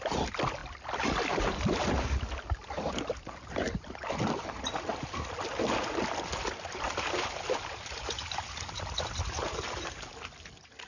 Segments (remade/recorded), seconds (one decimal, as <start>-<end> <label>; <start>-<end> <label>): 0.0-10.9 recorded